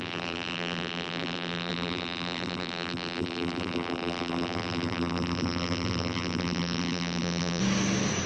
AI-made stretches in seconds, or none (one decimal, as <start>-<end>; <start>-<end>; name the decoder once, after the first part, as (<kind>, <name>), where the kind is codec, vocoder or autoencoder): 0.0-7.6 (vocoder, BigVGAN v2)